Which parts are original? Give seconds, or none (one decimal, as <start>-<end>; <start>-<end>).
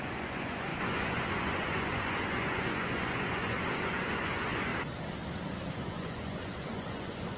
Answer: 4.7-5.7